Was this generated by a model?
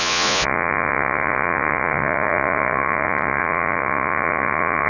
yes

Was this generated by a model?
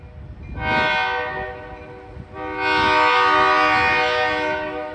no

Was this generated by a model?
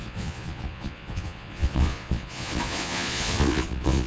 yes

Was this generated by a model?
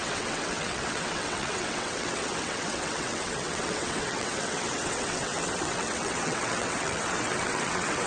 yes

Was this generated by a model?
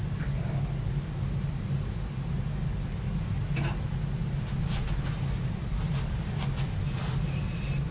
no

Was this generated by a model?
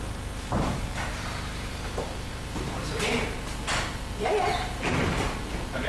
yes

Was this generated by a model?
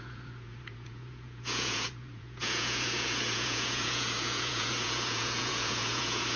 yes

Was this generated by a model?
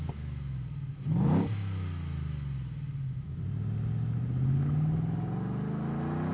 no